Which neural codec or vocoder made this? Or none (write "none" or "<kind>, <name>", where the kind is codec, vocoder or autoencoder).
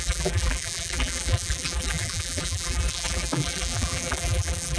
vocoder, BigVGAN v2